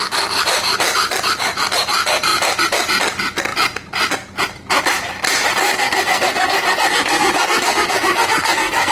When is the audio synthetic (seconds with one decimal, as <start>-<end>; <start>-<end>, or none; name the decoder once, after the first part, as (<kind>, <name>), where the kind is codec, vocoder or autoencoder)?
5.6-8.9 (codec, SNAC)